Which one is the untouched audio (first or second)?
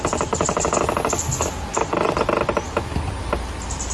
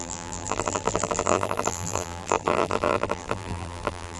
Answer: first